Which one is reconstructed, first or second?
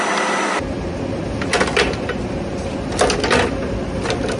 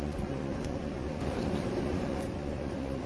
second